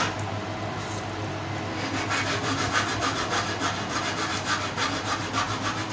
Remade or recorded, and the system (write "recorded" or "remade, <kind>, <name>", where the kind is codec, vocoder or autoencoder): recorded